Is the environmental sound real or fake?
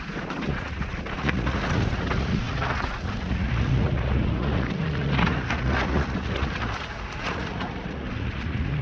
fake